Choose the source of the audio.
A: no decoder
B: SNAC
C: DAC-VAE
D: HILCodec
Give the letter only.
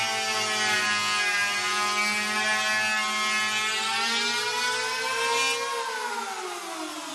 A